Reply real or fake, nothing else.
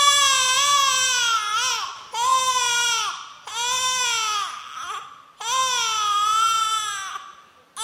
real